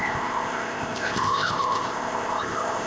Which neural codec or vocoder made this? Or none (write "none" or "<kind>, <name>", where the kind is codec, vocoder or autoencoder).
codec, ZipCodec